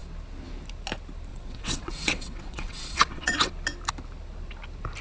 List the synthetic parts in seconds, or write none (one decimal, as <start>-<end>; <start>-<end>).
1.3-3.5

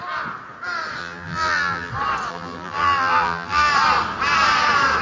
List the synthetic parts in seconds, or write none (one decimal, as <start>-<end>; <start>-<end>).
1.0-1.9; 2.3-3.7

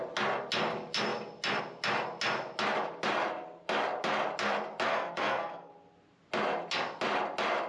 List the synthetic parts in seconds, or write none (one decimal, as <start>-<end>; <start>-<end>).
4.9-5.7